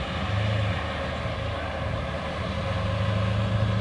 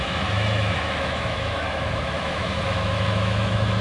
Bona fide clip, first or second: first